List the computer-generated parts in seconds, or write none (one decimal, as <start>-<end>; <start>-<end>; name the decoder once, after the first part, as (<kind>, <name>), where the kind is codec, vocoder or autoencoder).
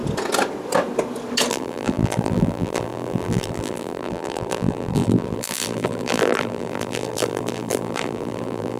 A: 1.5-8.8 (vocoder, BigVGAN v2)